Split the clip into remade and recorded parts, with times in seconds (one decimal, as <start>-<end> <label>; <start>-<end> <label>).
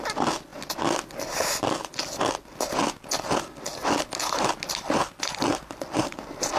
0.0-6.6 recorded